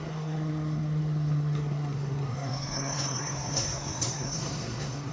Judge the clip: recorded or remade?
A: remade